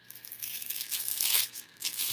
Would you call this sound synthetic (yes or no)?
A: yes